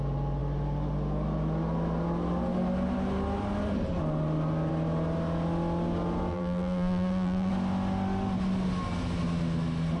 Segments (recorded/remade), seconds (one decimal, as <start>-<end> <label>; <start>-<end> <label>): 0.0-6.3 recorded; 6.3-7.5 remade; 7.5-10.0 recorded